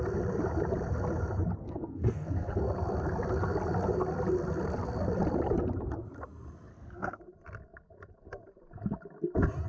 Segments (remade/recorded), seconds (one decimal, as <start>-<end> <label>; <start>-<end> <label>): 0.0-1.6 recorded; 1.6-2.6 remade; 2.6-6.7 recorded; 6.7-7.2 remade; 7.2-9.7 recorded